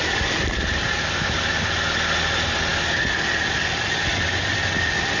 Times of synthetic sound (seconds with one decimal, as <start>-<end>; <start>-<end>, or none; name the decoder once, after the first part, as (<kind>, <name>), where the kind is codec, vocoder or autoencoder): 0.0-1.4 (vocoder, BigVGAN v2)